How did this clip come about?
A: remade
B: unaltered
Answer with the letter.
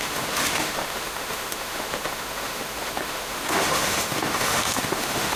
A